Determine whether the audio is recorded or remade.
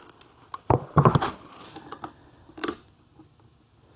recorded